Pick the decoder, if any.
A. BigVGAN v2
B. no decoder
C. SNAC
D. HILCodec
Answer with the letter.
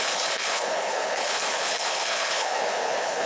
D